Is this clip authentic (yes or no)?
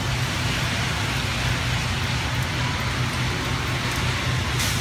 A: yes